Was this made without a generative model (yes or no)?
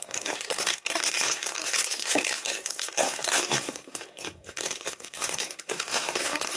no